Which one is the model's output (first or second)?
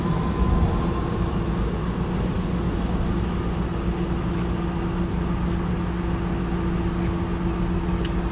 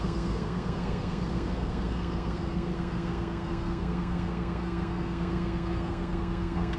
second